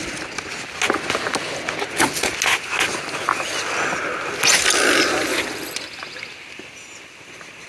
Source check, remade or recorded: recorded